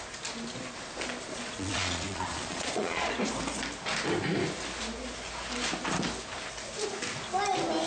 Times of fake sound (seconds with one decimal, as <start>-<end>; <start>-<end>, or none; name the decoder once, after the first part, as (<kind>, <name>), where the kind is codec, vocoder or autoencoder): 1.3-3.1 (vocoder, Vocos)

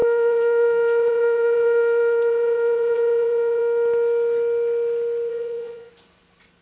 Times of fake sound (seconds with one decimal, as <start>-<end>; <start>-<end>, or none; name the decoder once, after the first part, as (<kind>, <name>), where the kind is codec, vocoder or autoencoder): 0.0-3.6 (vocoder, Vocos); 5.3-5.9

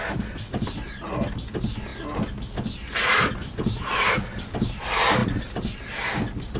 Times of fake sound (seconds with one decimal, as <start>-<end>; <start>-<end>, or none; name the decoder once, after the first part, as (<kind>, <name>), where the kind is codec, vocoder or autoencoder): none

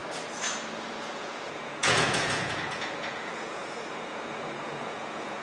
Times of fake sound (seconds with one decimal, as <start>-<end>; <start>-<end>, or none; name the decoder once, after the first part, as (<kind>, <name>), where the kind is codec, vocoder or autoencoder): 1.0-5.4 (vocoder, Vocos)

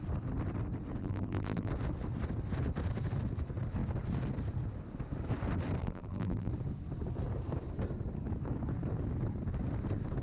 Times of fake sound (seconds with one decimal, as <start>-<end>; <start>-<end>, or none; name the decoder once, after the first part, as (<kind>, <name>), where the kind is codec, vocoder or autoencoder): 1.0-1.7 (vocoder, BigVGAN v2); 5.8-6.5